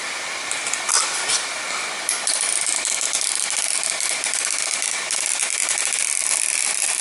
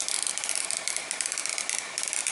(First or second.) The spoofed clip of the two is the second